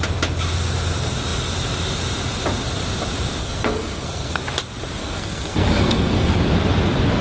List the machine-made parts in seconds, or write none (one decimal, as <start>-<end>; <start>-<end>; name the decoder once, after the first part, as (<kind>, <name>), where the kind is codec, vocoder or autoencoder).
3.4-4.4 (codec, SNAC); 5.0-6.4